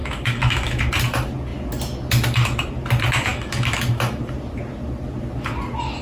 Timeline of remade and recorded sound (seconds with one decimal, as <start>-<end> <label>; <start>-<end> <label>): 0.0-0.9 remade; 0.9-3.3 recorded; 3.3-4.2 remade; 4.2-6.0 recorded